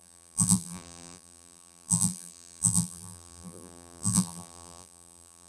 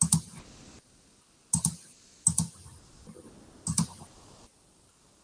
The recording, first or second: second